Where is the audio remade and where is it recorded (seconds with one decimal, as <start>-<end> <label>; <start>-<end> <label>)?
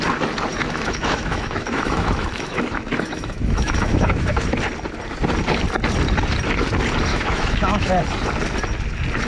0.0-0.5 recorded; 0.5-4.4 remade; 4.4-7.1 recorded; 7.1-7.9 remade; 7.9-9.3 recorded